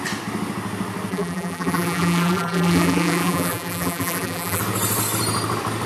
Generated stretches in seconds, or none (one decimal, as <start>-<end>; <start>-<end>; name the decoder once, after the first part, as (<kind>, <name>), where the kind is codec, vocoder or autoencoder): 1.1-4.6 (vocoder, BigVGAN v2)